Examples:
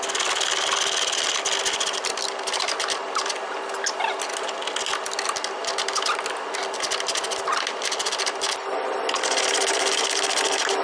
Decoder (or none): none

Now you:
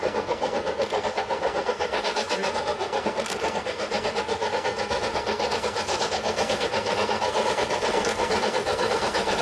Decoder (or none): codec, SNAC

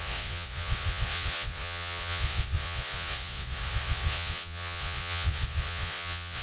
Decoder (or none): vocoder, Vocos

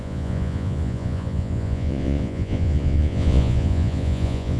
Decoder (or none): vocoder, Vocos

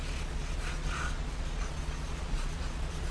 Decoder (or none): vocoder, Vocos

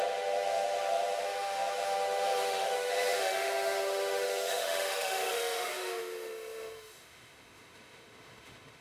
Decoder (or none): autoencoder, DAC-VAE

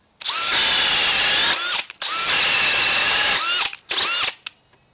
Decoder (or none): none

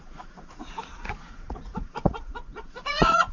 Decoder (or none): vocoder, Vocos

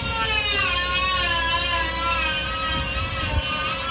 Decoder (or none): none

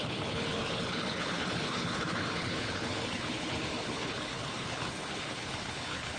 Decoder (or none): codec, HILCodec